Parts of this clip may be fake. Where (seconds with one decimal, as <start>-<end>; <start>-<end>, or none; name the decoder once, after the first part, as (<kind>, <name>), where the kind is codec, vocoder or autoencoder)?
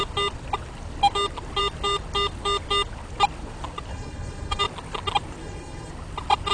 3.9-4.6 (codec, HILCodec); 5.4-5.9